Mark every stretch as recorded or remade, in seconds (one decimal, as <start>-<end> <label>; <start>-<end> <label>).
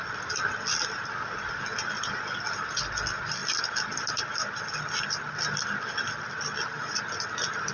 0.0-7.7 recorded